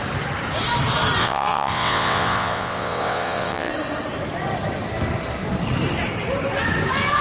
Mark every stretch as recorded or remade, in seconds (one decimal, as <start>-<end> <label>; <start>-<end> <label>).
0.0-1.2 recorded; 1.2-3.7 remade; 3.7-7.2 recorded